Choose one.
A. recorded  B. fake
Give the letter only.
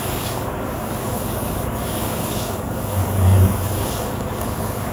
B